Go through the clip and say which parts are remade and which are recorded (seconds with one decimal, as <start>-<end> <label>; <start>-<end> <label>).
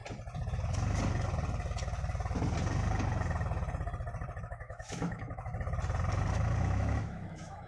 0.0-4.4 recorded; 4.4-5.5 remade; 5.5-6.3 recorded; 6.3-7.7 remade